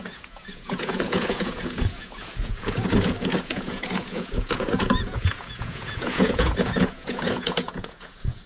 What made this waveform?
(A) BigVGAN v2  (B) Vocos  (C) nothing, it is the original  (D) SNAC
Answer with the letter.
B